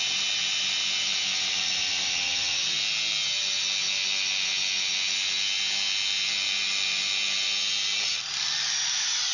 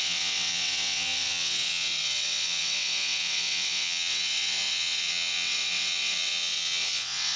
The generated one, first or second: second